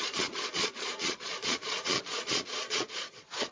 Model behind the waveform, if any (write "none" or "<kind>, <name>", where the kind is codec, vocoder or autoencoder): vocoder, Vocos